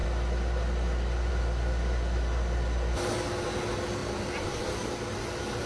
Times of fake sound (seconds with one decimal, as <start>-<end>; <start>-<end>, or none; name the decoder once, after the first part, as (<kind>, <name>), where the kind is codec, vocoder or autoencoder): none